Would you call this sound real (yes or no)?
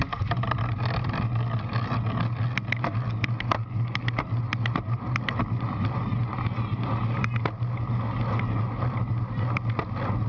yes